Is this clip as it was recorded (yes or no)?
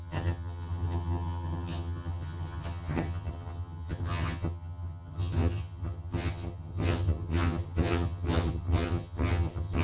no